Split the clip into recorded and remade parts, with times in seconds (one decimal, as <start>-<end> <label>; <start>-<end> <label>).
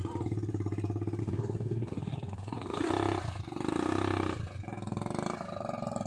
0.0-1.2 recorded; 1.2-2.9 remade; 2.9-6.1 recorded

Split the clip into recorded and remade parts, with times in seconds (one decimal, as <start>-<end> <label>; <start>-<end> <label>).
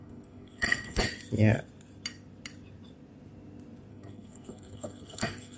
0.0-1.0 remade; 1.0-3.9 recorded; 3.9-5.6 remade